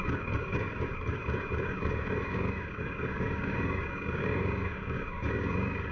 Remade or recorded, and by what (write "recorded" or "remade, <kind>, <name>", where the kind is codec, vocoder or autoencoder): remade, codec, DAC